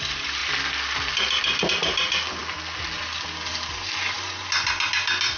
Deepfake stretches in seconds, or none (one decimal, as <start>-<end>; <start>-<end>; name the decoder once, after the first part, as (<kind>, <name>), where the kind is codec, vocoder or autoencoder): none